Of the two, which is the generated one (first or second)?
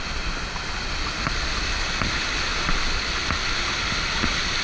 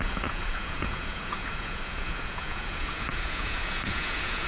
second